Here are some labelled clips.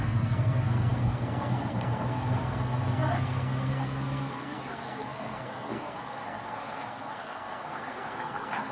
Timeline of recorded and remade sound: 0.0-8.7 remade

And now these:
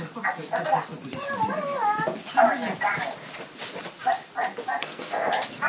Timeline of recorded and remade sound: 0.0-4.8 recorded; 4.8-5.3 remade; 5.3-5.7 recorded